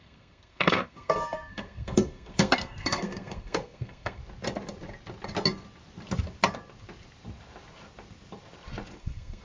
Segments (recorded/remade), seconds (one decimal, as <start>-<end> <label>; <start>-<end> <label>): 0.0-4.2 remade; 4.2-9.0 recorded; 9.0-9.4 remade

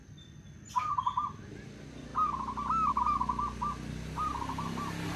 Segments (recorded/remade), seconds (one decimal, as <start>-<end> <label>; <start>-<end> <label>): 0.0-5.2 recorded